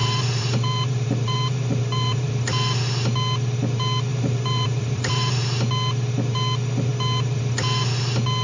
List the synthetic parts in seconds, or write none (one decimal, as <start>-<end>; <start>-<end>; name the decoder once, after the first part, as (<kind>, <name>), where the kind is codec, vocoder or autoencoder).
0.0-2.3 (vocoder, BigVGAN v2); 4.1-5.4